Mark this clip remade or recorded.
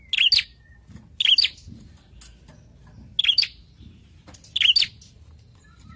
recorded